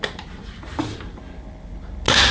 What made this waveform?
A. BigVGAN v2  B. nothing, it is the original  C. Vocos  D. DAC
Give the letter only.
B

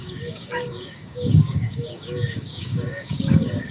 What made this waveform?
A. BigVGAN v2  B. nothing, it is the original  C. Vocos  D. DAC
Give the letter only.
D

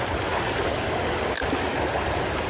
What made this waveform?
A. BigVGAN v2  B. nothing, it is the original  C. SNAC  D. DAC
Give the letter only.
B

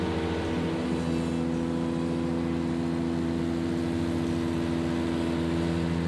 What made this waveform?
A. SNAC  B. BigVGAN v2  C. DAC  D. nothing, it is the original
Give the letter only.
D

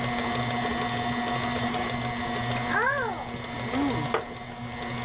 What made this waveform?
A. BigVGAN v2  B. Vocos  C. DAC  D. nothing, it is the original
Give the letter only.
D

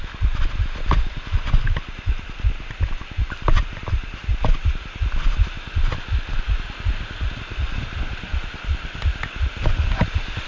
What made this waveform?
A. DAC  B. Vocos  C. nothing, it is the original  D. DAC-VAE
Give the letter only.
C